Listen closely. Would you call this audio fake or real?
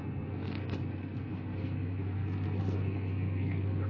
fake